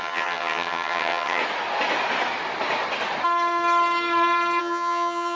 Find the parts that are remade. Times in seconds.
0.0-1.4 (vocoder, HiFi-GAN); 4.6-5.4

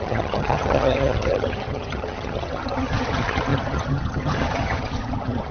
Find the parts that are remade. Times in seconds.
0.0-5.5 (vocoder, HiFi-GAN)

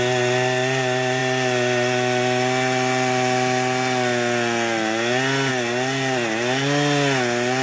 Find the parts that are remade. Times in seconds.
none